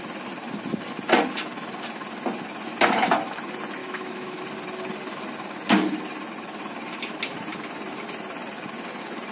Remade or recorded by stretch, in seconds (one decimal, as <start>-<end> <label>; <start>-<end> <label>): 0.0-3.8 recorded; 3.8-4.4 remade; 4.4-9.3 recorded